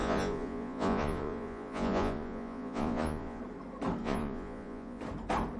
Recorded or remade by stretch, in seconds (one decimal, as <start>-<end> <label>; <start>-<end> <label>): 0.0-3.4 remade; 3.4-4.0 recorded; 4.0-5.0 remade; 5.0-5.6 recorded